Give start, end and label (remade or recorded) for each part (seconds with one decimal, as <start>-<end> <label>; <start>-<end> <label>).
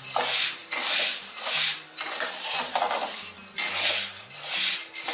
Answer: 0.0-5.1 recorded